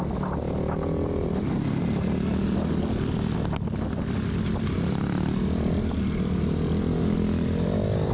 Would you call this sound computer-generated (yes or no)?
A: no